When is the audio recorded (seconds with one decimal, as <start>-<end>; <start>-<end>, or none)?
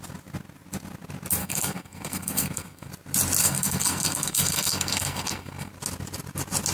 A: 0.0-1.4; 2.9-3.4; 5.7-6.7